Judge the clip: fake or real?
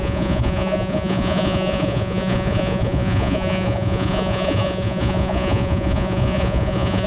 fake